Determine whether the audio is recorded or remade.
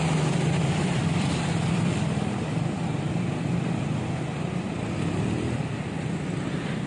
remade